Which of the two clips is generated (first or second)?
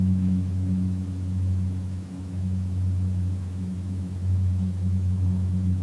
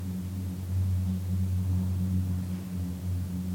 first